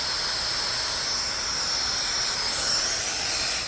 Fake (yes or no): no